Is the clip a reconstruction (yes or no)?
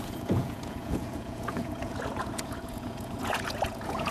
yes